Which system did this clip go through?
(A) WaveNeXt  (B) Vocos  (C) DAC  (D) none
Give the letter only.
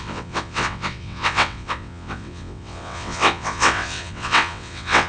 A